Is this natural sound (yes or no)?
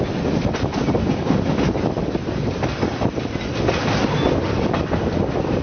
yes